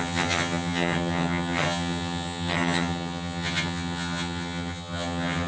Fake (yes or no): yes